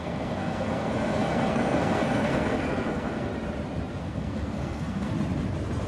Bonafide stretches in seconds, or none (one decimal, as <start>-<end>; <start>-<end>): 3.3-4.0; 5.1-5.9